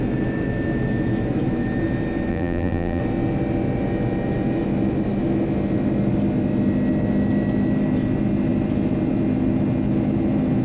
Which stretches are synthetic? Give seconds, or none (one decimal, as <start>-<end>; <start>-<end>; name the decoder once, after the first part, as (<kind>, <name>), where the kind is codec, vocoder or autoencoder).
2.3-3.0 (vocoder, BigVGAN v2)